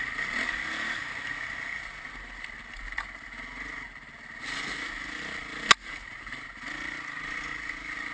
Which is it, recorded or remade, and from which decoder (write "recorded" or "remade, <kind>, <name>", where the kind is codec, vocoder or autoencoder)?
recorded